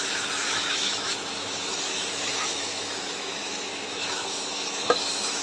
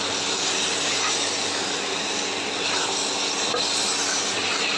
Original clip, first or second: second